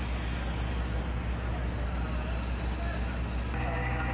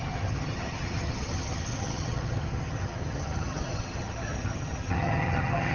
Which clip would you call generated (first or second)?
second